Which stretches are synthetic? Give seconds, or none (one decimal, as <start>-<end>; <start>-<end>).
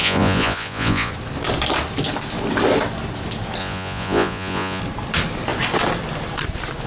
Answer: 0.0-1.1; 3.6-4.8